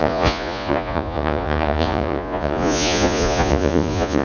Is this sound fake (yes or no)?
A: yes